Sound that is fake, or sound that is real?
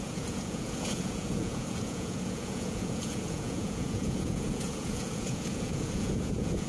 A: fake